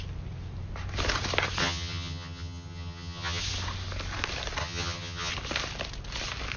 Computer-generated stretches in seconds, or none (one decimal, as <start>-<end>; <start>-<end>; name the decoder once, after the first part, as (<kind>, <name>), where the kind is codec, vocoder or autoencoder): 1.6-3.4 (vocoder, HiFi-GAN); 4.6-5.3